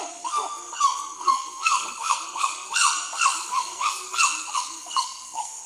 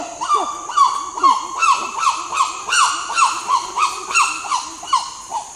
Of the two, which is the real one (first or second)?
second